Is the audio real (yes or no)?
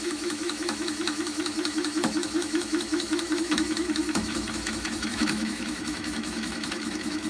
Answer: no